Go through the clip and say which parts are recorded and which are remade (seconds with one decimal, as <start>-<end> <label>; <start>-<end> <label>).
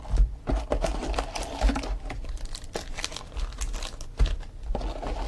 0.0-5.3 recorded